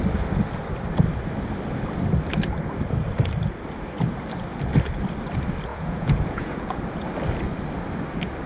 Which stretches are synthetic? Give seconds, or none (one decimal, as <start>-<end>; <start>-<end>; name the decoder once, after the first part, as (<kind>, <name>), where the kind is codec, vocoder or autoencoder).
5.7-6.8 (vocoder, Vocos)